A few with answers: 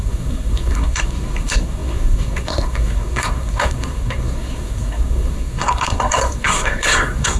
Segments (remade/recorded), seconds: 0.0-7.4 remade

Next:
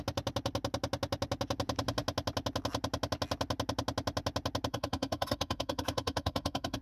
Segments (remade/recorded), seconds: 0.0-4.7 recorded; 4.7-6.8 remade

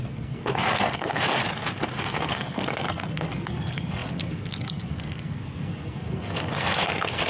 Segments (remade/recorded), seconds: 0.0-1.4 remade; 1.4-2.0 recorded; 2.0-7.3 remade

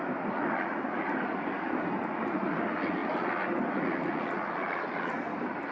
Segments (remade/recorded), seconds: 0.0-5.7 recorded

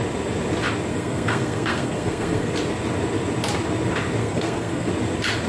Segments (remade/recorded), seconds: 0.0-0.9 recorded; 0.9-2.5 remade; 2.5-4.2 recorded; 4.2-4.9 remade; 4.9-5.5 recorded

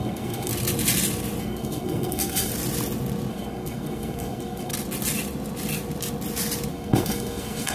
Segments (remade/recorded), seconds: 0.0-0.5 remade; 0.5-1.4 recorded; 1.4-2.5 remade; 2.5-3.3 recorded; 3.3-4.7 remade; 4.7-6.7 recorded; 6.7-7.7 remade